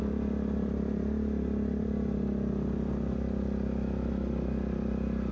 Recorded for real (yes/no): yes